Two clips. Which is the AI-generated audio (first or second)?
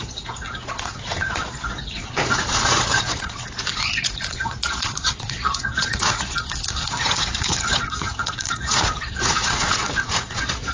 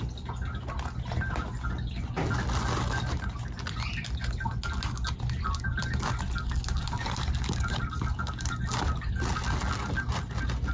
first